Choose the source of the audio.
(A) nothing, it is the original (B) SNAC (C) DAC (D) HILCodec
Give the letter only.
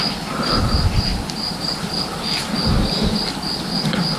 A